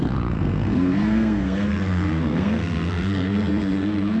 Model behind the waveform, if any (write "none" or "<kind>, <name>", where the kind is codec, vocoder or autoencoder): codec, SNAC